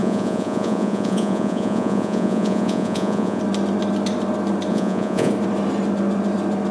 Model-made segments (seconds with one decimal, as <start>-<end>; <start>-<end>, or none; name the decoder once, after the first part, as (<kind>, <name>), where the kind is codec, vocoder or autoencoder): 0.0-3.4 (vocoder, Vocos); 4.7-5.3